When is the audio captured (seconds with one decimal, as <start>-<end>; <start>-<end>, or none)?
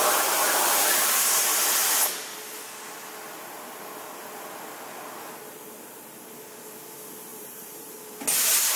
0.0-7.3; 8.0-8.8